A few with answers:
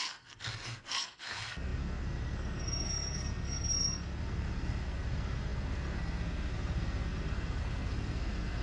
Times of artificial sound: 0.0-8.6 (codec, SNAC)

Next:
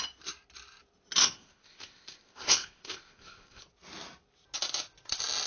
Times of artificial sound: 1.2-3.6 (codec, ZipCodec)

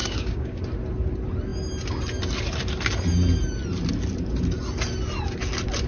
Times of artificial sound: 0.0-0.6 (codec, DAC)

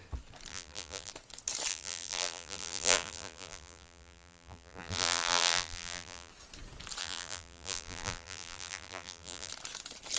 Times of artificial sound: 0.5-1.1 (vocoder, BigVGAN v2); 1.7-6.3; 7.0-9.5

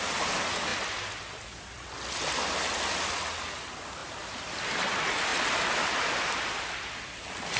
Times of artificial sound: 4.0-4.6 (vocoder, BigVGAN v2)

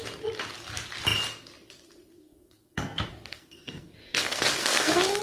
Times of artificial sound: 2.1-5.2 (codec, SNAC)

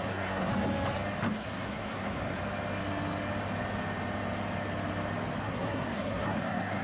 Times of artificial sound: 0.0-0.5 (codec, SNAC); 1.3-2.4; 5.4-6.8

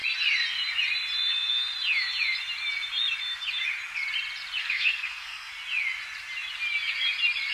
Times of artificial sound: 4.6-5.5 (codec, SNAC)